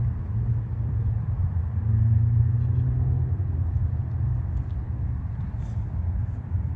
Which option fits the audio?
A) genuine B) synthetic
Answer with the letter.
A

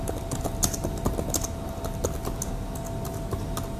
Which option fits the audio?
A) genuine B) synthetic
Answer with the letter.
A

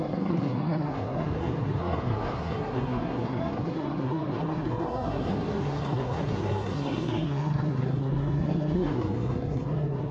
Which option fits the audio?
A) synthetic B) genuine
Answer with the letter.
A